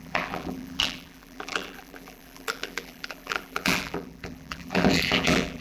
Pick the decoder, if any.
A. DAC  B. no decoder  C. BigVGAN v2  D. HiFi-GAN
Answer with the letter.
C